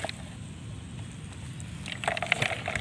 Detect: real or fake real